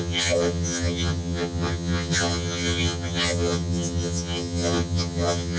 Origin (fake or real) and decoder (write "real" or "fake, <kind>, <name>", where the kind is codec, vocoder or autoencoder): fake, vocoder, HiFi-GAN